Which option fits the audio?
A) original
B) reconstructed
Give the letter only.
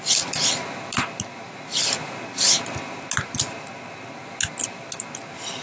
A